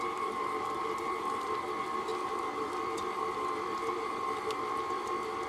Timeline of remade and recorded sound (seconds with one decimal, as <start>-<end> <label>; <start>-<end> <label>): 0.0-5.5 recorded